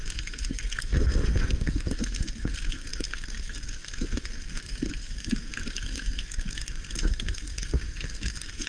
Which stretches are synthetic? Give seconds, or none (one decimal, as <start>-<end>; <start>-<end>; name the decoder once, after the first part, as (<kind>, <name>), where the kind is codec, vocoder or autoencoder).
0.0-8.7 (codec, SNAC)